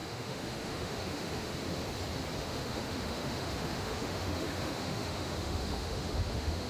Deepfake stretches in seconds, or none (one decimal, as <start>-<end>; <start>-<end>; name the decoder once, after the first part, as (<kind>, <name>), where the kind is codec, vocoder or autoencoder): 0.0-1.8 (autoencoder, DAC-VAE); 2.4-6.7